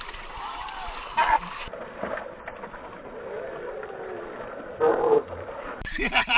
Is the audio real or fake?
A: fake